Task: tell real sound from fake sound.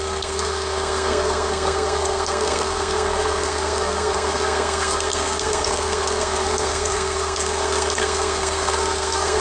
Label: fake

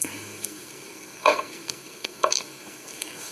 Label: fake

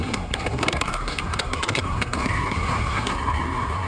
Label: fake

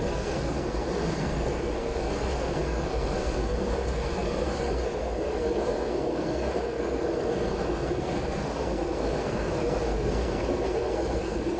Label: fake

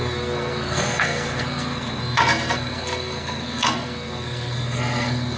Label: fake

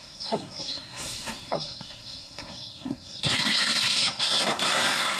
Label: fake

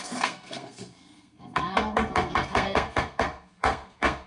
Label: fake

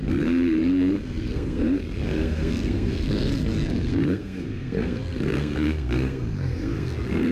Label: fake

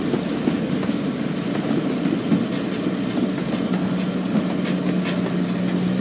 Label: real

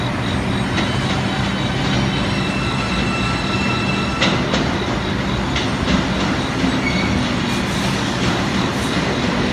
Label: real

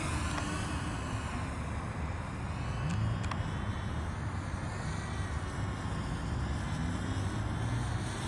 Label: real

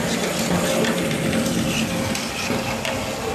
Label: real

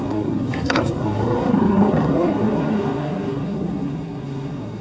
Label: fake